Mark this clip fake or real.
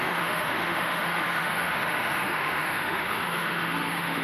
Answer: fake